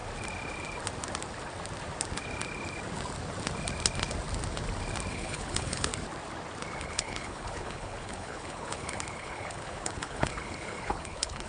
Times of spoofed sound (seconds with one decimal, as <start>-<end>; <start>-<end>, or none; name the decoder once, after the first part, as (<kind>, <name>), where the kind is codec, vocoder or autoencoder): 5.1-5.9 (codec, HILCodec); 6.8-11.5